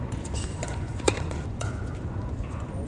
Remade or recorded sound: remade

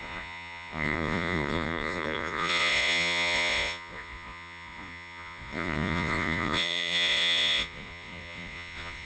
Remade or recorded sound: remade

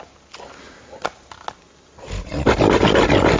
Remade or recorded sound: recorded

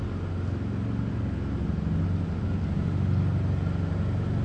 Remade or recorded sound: recorded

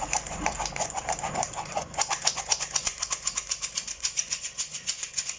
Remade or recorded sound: remade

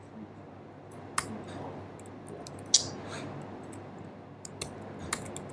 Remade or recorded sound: recorded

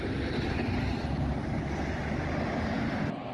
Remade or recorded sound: recorded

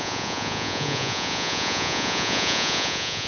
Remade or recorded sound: remade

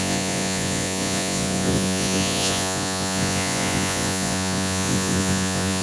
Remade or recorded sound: remade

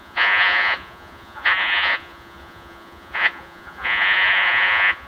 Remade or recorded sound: remade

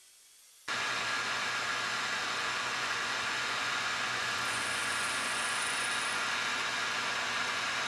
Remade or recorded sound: remade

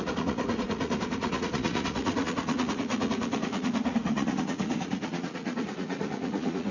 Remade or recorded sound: remade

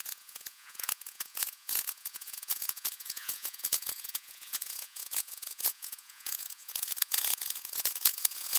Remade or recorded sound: remade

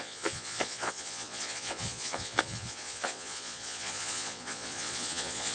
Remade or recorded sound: remade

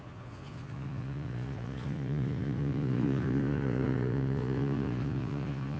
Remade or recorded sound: remade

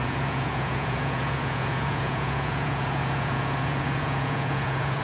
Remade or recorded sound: remade